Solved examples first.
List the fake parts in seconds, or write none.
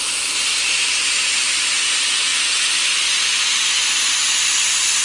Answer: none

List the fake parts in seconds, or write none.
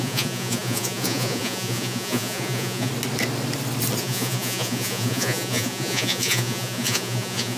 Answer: 0.0-2.9 (vocoder, Vocos); 4.0-7.6